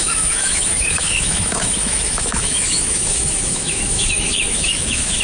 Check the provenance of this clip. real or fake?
fake